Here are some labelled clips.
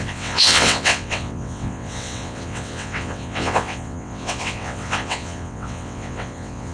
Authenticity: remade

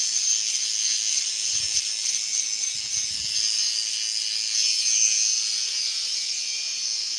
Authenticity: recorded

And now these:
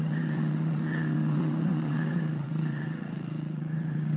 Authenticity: remade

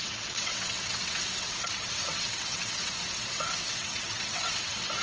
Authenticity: remade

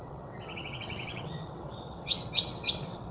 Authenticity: remade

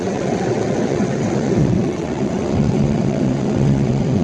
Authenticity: remade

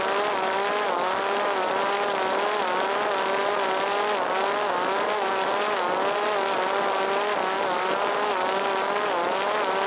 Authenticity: recorded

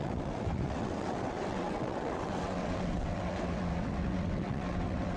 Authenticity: remade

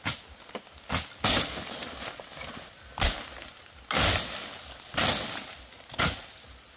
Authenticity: recorded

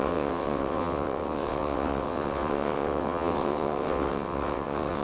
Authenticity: remade